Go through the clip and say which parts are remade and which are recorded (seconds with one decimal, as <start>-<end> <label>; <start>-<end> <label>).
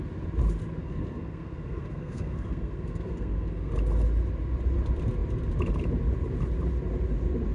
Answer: 0.0-0.8 recorded; 0.8-3.7 remade; 3.7-7.5 recorded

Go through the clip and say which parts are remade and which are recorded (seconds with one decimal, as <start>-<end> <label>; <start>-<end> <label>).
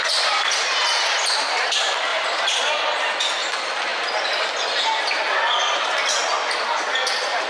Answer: 0.0-1.6 remade; 1.6-2.1 recorded; 2.1-3.1 remade; 3.1-7.5 recorded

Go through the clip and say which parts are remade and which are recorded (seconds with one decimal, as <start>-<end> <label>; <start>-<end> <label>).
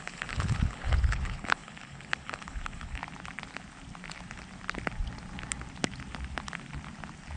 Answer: 0.0-3.0 remade; 3.0-7.4 recorded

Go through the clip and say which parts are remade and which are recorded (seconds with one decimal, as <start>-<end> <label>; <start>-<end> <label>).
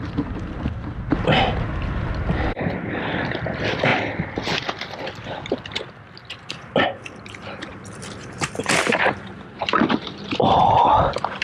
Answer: 0.0-7.7 recorded; 7.7-10.1 remade; 10.1-10.6 recorded; 10.6-11.4 remade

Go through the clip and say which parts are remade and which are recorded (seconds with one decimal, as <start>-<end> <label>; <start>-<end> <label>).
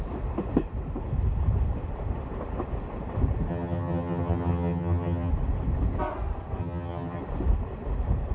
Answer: 0.0-3.5 recorded; 3.5-5.3 remade; 5.3-6.6 recorded; 6.6-7.2 remade; 7.2-8.3 recorded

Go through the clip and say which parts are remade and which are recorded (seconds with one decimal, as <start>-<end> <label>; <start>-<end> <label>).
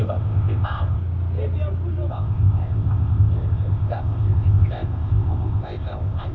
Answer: 0.0-1.0 remade; 1.0-2.1 recorded; 2.1-6.3 remade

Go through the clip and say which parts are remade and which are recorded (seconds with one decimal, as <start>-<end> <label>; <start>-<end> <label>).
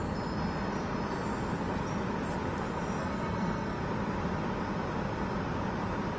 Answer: 0.0-3.0 recorded; 3.0-3.8 remade; 3.8-6.2 recorded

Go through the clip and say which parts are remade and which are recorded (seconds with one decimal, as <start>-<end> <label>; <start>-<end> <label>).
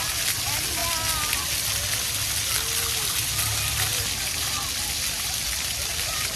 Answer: 0.0-6.4 recorded